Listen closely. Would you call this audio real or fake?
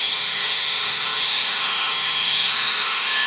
fake